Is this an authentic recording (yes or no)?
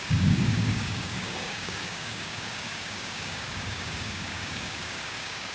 no